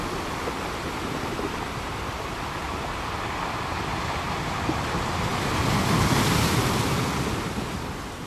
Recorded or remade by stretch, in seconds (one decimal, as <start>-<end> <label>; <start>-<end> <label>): 0.0-8.3 recorded